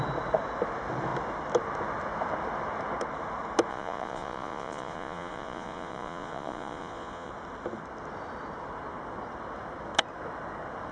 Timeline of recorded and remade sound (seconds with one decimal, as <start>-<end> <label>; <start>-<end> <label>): 0.0-3.7 recorded; 3.7-7.3 remade; 7.3-10.9 recorded